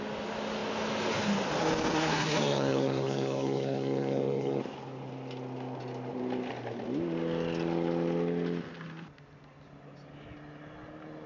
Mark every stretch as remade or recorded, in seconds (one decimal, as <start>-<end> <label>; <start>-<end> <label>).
0.0-1.9 recorded; 1.9-4.6 remade; 4.6-11.3 recorded